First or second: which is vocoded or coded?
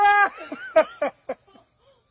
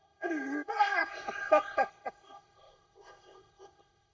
second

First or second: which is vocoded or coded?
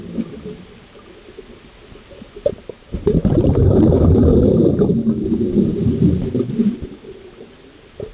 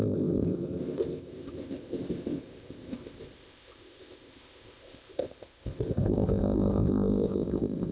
second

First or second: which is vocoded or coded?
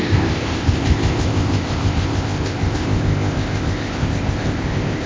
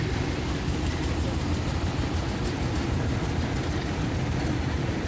first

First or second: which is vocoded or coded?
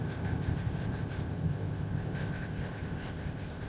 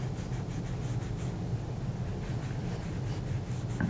first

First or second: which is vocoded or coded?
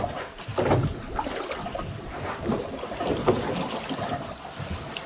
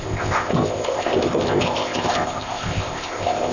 second